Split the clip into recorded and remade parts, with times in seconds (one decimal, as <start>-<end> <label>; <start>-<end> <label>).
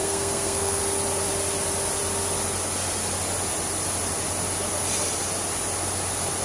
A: 0.0-0.8 remade; 0.8-6.4 recorded